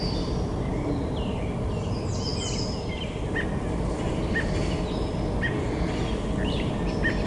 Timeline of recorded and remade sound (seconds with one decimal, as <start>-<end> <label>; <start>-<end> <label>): 0.0-7.3 recorded